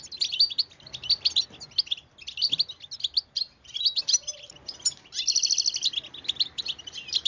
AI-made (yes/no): no